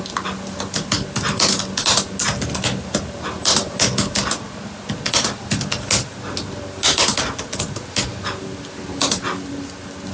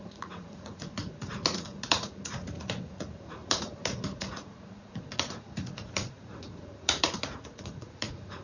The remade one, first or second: second